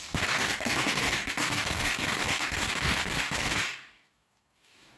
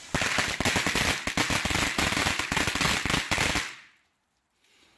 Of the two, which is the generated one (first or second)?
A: first